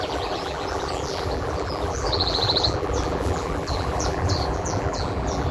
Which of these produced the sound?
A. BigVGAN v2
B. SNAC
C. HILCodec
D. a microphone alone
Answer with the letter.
A